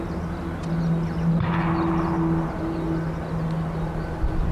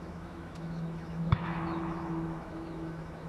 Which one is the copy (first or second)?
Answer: second